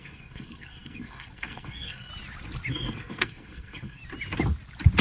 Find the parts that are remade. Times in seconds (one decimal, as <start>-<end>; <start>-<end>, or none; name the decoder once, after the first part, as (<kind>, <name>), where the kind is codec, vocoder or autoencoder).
0.0-2.1 (codec, SNAC); 2.7-4.0